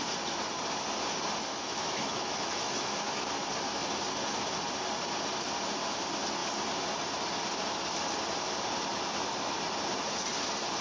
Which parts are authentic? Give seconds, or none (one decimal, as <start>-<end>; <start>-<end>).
0.0-1.5; 3.3-10.8